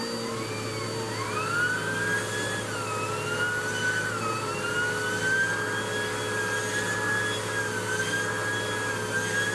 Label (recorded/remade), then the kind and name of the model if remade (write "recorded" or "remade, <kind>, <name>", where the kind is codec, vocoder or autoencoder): recorded